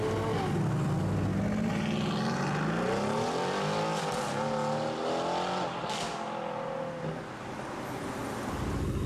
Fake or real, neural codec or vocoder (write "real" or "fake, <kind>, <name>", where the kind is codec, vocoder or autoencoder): real